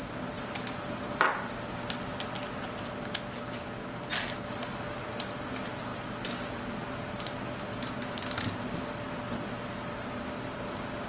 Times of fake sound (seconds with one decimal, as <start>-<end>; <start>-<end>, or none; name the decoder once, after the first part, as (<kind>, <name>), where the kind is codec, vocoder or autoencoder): none